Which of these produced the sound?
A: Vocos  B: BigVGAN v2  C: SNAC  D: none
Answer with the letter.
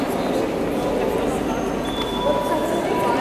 D